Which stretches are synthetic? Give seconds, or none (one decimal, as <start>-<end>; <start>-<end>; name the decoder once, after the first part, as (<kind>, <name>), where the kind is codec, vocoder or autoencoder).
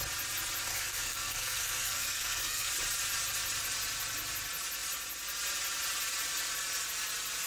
0.7-2.7 (codec, SNAC)